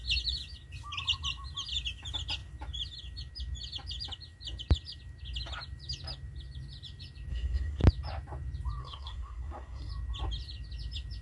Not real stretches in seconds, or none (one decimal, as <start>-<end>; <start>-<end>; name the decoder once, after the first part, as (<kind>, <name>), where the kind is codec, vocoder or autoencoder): 7.3-7.8 (codec, SNAC); 8.8-9.9